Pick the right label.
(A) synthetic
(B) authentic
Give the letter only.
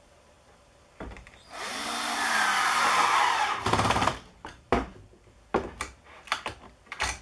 A